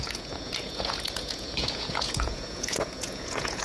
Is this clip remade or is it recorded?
remade